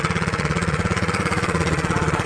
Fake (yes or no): yes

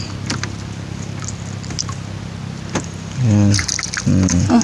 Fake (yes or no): no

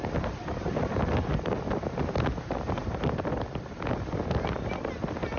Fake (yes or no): no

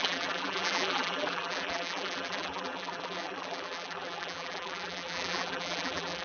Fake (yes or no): yes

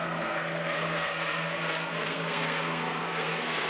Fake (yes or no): yes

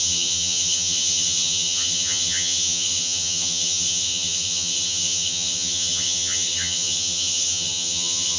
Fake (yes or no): yes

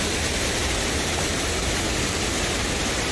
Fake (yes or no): no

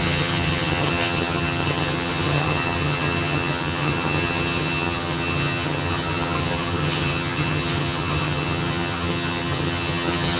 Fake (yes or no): yes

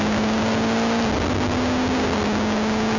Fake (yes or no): no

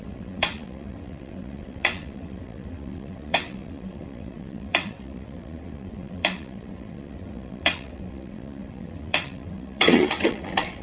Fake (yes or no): yes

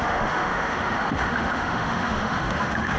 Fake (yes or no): yes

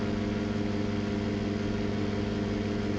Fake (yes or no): no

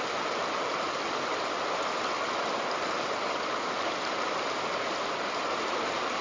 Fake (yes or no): no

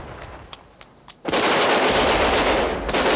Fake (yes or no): no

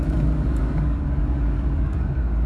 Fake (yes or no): yes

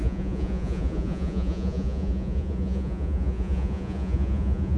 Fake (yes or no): yes